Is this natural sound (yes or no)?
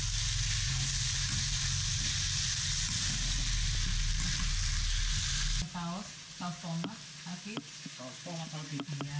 yes